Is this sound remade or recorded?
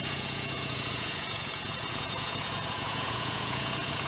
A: remade